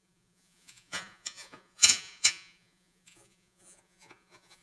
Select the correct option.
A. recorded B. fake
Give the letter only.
B